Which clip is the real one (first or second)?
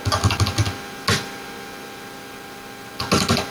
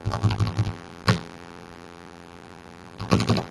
first